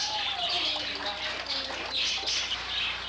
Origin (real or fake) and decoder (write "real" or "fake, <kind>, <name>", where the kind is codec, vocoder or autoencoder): real